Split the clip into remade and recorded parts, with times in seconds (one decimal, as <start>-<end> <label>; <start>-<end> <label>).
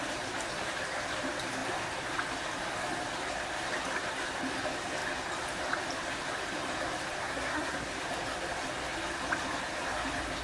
0.0-7.2 recorded; 7.2-7.9 remade; 7.9-10.4 recorded